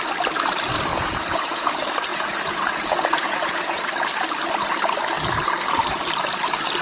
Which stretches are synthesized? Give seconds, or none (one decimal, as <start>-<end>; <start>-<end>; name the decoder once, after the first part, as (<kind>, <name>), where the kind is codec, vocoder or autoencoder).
0.9-1.7 (vocoder, Vocos); 2.1-3.8